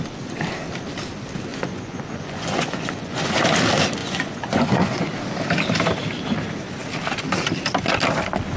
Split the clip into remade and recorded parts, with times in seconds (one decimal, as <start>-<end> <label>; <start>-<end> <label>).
0.0-1.5 recorded; 1.5-3.3 remade; 3.3-4.0 recorded; 4.0-5.1 remade; 5.1-8.6 recorded